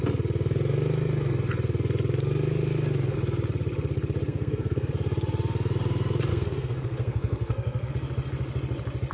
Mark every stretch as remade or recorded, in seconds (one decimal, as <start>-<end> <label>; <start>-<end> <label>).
0.0-4.3 recorded; 4.3-4.9 remade; 4.9-6.3 recorded; 6.3-7.9 remade; 7.9-9.1 recorded